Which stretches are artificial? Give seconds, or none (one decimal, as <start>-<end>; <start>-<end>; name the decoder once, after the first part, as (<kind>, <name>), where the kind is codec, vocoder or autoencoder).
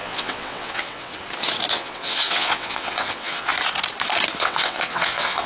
0.0-1.1 (vocoder, WaveNeXt); 1.7-3.5; 4.4-5.5